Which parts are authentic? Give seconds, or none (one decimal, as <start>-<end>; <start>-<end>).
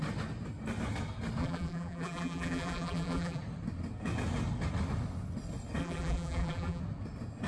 0.0-1.4; 3.4-5.8; 6.8-7.5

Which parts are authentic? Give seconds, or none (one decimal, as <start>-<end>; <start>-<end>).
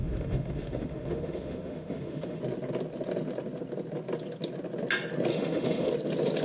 2.4-5.3; 5.9-6.4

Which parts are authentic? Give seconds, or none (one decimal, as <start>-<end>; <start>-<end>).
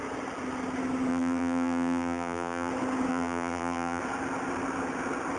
0.0-1.1; 2.7-3.1; 4.0-5.4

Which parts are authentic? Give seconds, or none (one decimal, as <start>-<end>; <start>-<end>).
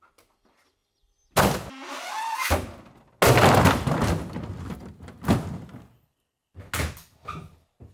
0.0-7.9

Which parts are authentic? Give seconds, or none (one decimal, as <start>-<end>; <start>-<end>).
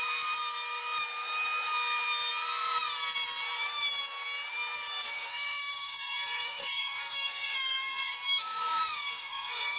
0.0-5.0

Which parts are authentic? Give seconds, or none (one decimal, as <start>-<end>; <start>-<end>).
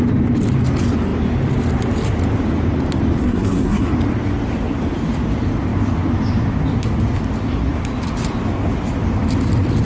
0.0-3.2; 3.9-9.8